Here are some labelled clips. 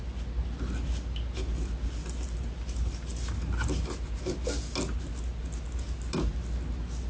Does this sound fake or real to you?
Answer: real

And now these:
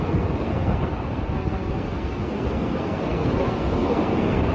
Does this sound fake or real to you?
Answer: fake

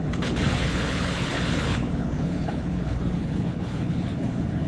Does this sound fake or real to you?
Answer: fake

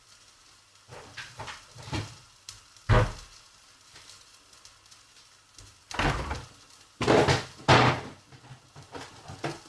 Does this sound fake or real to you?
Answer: real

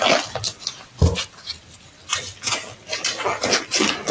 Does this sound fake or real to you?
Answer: real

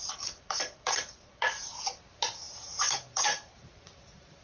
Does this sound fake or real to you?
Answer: fake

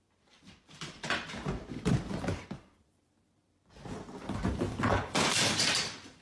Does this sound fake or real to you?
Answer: fake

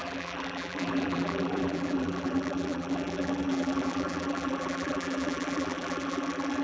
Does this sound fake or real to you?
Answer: fake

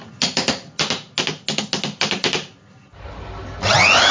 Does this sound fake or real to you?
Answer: real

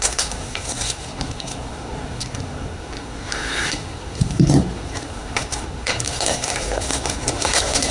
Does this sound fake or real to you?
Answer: fake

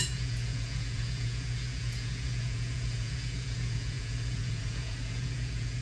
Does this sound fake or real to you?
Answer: fake